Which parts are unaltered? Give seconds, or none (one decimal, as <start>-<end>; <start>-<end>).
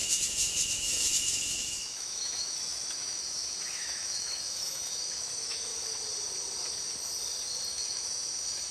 5.7-7.7